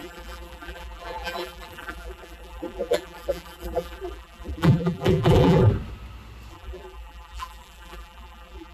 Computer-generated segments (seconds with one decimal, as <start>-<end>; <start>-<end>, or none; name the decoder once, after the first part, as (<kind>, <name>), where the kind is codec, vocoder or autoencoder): 0.0-5.7 (vocoder, BigVGAN v2); 6.5-8.7